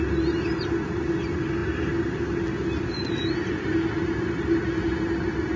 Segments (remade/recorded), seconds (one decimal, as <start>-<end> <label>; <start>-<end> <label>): 0.0-5.6 recorded